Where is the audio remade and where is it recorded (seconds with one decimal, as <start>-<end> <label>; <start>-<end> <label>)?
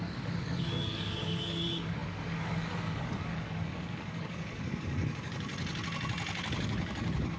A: 0.0-5.5 remade; 5.5-6.6 recorded; 6.6-7.4 remade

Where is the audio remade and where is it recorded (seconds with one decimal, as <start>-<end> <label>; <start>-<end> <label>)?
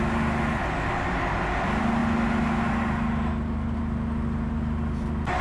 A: 0.0-5.4 recorded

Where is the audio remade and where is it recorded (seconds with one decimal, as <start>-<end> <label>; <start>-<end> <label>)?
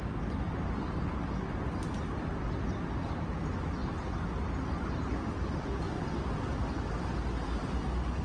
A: 0.0-8.2 recorded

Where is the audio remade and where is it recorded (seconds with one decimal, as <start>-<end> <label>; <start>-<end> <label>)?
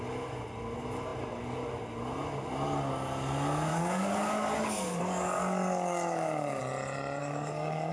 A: 0.0-3.7 recorded; 3.7-6.6 remade; 6.6-7.2 recorded; 7.2-7.9 remade